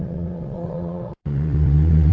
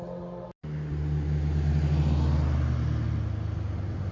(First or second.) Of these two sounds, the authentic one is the second